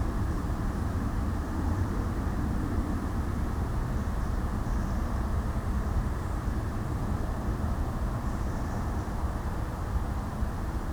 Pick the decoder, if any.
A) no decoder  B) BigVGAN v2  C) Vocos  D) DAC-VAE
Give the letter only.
B